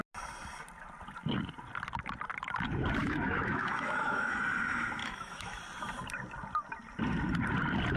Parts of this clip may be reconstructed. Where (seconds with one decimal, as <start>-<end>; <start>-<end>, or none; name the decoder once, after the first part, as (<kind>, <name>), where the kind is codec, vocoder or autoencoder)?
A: 3.0-4.4 (autoencoder, DAC-VAE); 5.0-5.6